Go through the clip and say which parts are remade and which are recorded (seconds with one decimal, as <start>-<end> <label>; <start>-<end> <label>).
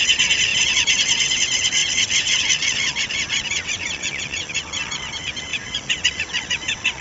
0.0-7.0 remade